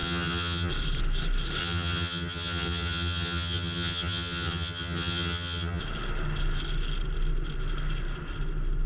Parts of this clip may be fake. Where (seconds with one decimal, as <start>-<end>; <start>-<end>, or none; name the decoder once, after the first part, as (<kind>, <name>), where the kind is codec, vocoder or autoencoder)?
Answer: 0.0-0.7 (vocoder, HiFi-GAN); 1.6-5.8